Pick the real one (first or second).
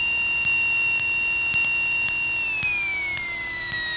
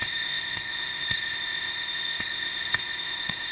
first